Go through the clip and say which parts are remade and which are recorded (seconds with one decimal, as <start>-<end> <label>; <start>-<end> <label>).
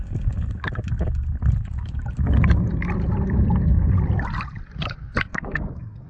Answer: 0.0-5.3 recorded; 5.3-6.1 remade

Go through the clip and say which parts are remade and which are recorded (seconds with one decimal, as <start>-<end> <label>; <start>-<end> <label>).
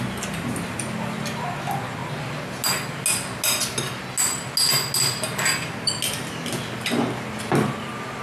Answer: 0.0-8.2 recorded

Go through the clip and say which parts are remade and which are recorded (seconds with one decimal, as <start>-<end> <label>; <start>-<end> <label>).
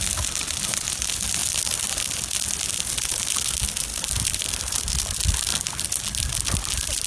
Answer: 0.0-3.9 recorded; 3.9-4.9 remade; 4.9-7.1 recorded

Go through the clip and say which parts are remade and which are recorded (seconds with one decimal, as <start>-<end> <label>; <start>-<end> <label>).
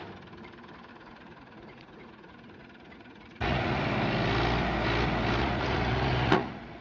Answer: 0.0-0.9 recorded; 0.9-3.8 remade; 3.8-5.4 recorded; 5.4-6.8 remade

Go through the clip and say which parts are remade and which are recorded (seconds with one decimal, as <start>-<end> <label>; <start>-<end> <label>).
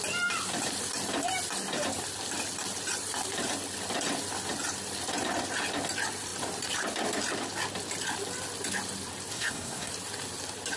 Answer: 0.0-9.3 recorded; 9.3-9.9 remade; 9.9-10.8 recorded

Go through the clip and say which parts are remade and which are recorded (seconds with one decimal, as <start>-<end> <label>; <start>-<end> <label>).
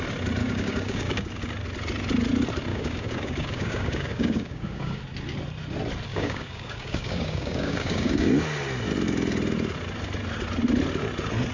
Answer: 0.0-0.4 recorded; 0.4-1.4 remade; 1.4-2.7 recorded; 2.7-5.0 remade; 5.0-6.1 recorded; 6.1-8.3 remade; 8.3-11.5 recorded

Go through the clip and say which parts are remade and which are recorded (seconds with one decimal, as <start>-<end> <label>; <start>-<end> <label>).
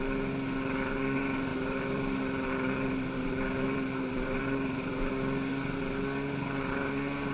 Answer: 0.0-1.5 recorded; 1.5-5.1 remade; 5.1-7.3 recorded